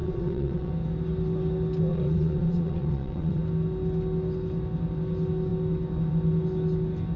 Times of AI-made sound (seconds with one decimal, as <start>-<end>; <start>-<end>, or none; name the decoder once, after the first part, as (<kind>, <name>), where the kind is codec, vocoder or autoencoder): 0.0-0.7 (vocoder, WaveNeXt); 1.9-3.4